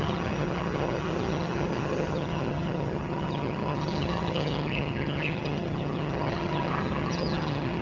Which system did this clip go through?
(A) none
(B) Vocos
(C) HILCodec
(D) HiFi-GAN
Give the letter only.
D